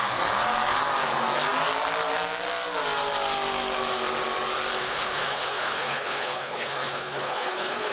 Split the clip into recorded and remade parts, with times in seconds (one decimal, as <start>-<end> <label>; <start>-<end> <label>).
0.0-4.8 recorded; 4.8-7.9 remade